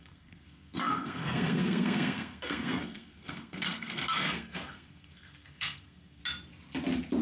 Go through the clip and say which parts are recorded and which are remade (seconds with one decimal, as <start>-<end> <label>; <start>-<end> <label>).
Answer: 0.0-6.2 remade; 6.2-7.2 recorded